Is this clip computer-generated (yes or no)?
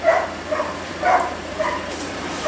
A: yes